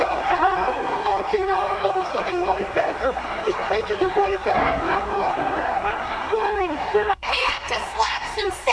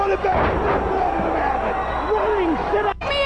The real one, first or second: second